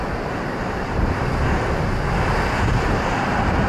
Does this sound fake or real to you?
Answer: real